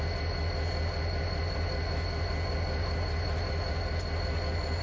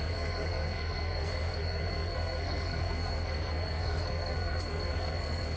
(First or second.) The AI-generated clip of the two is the second